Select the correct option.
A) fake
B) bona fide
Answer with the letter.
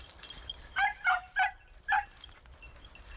B